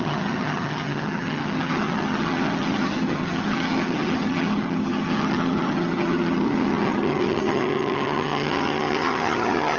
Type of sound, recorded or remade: remade